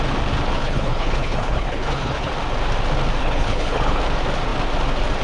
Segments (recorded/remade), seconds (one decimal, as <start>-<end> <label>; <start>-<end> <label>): 0.0-0.6 recorded; 0.6-2.3 remade; 2.3-3.2 recorded; 3.2-4.0 remade; 4.0-5.2 recorded